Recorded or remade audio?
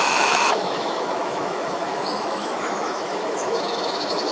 remade